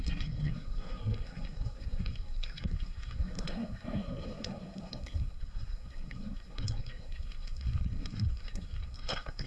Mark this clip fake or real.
fake